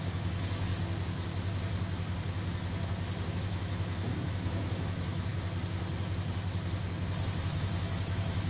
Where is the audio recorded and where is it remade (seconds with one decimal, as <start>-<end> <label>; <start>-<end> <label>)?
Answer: 0.0-0.7 remade; 0.7-3.3 recorded; 3.3-5.3 remade; 5.3-7.4 recorded; 7.4-8.5 remade

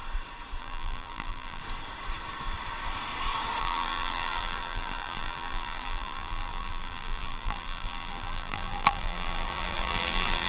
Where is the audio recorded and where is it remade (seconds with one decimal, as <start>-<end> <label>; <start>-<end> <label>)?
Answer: 0.0-0.6 recorded; 0.6-1.6 remade; 1.6-3.6 recorded; 3.6-10.5 remade

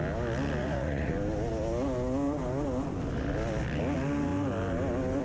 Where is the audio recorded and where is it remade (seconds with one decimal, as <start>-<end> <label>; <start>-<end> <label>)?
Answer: 0.0-0.6 recorded; 0.6-1.1 remade; 1.1-5.2 recorded

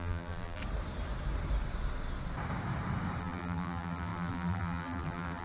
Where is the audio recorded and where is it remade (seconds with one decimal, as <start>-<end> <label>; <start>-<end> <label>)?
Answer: 0.0-0.6 remade; 0.6-3.2 recorded; 3.2-5.4 remade

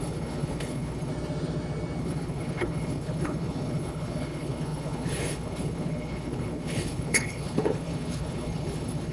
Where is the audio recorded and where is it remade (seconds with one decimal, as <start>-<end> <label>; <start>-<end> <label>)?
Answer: 0.0-1.1 remade; 1.1-2.0 recorded; 2.0-9.1 remade